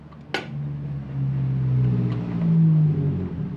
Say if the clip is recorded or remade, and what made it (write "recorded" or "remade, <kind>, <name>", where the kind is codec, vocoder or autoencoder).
recorded